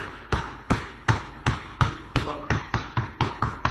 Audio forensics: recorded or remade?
remade